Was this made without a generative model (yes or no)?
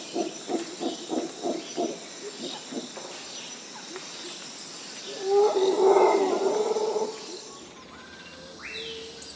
yes